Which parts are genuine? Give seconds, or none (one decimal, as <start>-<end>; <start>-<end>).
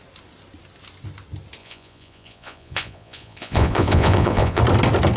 0.0-1.6; 4.6-5.2